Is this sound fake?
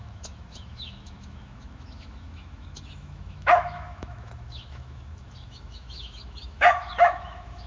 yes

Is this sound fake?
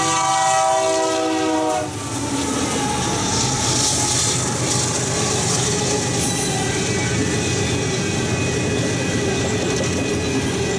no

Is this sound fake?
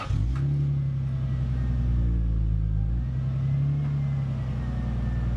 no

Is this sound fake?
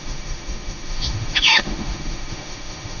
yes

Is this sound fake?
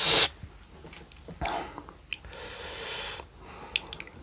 no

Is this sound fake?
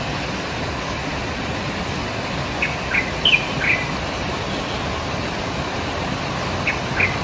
no